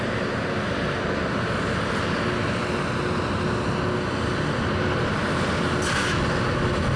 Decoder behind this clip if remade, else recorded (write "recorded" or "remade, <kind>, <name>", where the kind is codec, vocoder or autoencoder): recorded